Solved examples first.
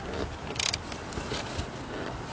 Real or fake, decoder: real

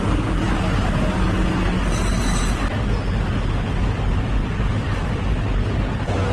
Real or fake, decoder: real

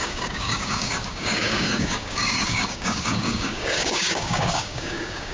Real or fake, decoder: fake, codec, DAC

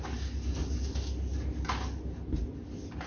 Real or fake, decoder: real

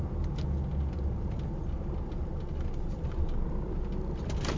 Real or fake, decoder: real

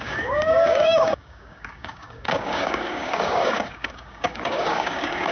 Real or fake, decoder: fake, codec, DAC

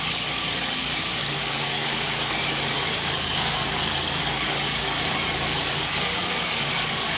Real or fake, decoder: fake, codec, DAC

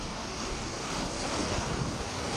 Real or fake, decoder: fake, codec, DAC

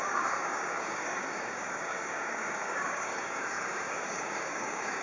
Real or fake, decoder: fake, codec, DAC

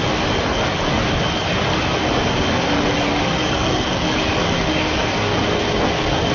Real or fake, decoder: real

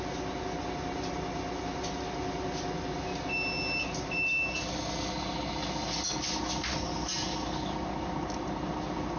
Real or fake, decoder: real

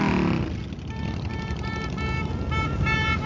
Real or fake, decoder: real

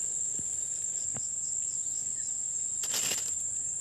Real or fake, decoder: real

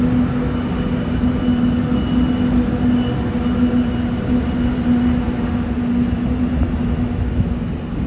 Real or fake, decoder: real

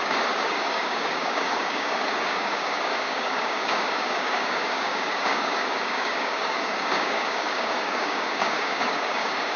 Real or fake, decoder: fake, codec, DAC